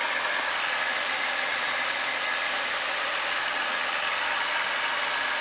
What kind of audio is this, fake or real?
real